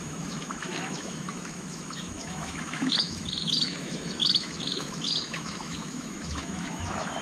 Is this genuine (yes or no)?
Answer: no